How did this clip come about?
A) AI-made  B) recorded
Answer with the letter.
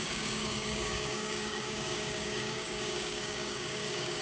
A